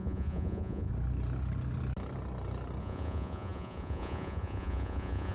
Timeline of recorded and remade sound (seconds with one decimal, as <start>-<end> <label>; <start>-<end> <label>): 0.0-0.9 remade; 0.9-2.8 recorded; 2.8-5.3 remade